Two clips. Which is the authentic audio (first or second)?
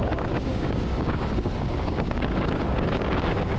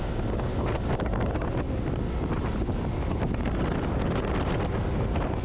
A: second